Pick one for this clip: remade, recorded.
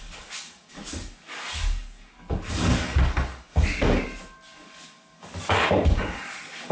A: remade